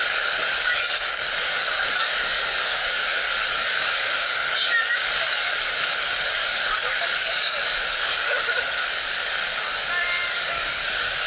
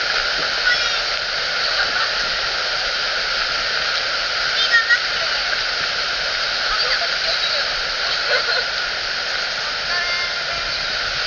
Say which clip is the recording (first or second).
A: second